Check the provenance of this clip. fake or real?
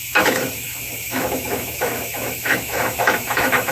fake